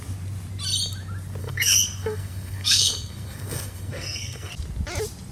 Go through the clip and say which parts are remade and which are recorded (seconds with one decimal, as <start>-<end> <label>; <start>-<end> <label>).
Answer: 0.0-1.4 recorded; 1.4-4.5 remade; 4.5-5.3 recorded